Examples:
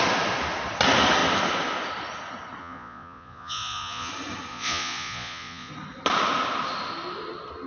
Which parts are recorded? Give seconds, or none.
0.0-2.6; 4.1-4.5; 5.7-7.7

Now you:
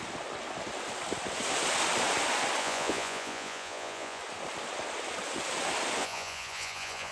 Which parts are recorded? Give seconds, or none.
0.0-2.6; 4.2-6.0

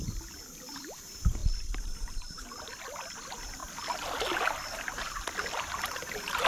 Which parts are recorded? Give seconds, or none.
0.0-6.5